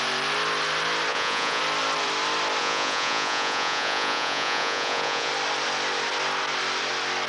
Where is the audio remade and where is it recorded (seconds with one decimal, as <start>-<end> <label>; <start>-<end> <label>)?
0.0-1.1 recorded; 1.1-1.6 remade; 1.6-2.6 recorded; 2.6-5.3 remade; 5.3-7.3 recorded